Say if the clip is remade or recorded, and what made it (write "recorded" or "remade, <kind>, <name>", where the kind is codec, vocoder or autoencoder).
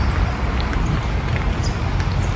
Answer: recorded